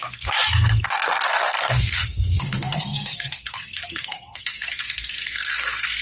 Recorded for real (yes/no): no